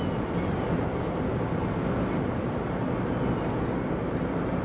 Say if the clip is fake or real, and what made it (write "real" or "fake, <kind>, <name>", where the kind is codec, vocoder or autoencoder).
real